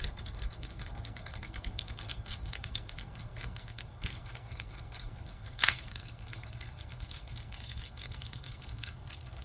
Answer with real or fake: fake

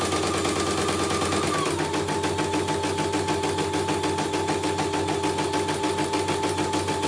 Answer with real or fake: real